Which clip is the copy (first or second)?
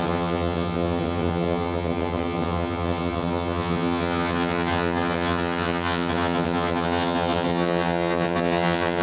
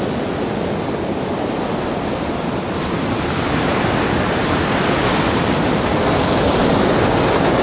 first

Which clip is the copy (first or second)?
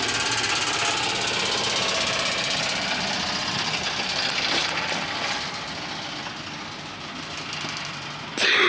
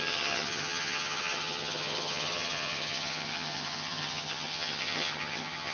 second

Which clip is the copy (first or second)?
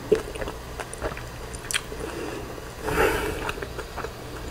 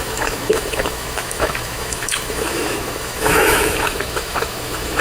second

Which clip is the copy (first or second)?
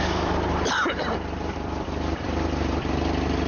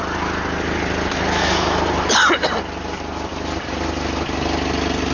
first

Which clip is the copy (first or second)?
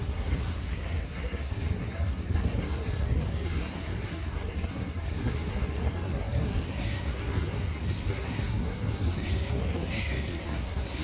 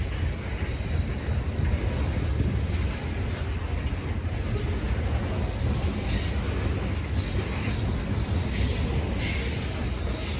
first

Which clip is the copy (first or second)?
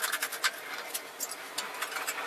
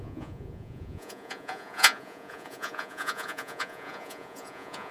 second